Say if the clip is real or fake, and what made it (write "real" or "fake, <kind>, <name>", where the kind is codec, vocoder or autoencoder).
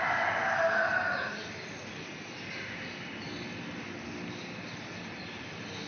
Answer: real